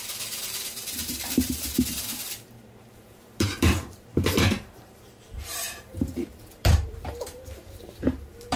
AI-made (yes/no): yes